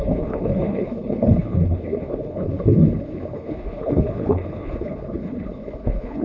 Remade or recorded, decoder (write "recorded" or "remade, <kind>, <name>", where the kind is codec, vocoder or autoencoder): remade, codec, HILCodec